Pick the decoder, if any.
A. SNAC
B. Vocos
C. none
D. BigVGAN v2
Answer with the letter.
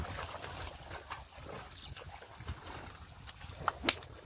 C